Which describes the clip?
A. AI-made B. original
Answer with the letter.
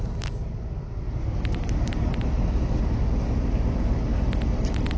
A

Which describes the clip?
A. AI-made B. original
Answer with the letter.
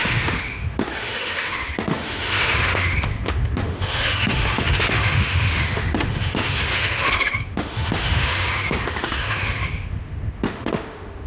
A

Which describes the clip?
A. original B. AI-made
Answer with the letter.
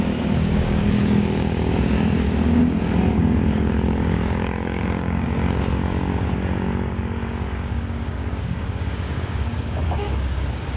B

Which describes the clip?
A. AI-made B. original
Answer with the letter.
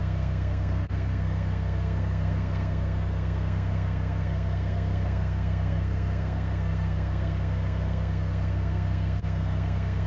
A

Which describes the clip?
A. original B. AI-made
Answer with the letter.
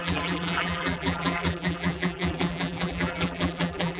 B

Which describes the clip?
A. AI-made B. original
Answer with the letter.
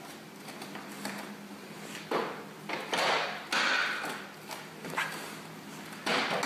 B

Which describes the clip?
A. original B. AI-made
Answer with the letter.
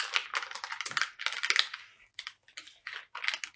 A